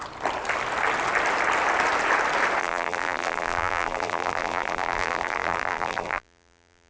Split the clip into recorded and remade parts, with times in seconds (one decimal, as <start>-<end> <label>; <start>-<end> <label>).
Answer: 0.0-2.6 recorded; 2.6-6.9 remade